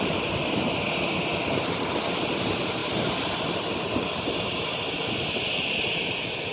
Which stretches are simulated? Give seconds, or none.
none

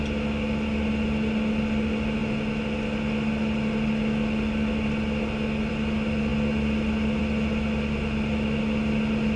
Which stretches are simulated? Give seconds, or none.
none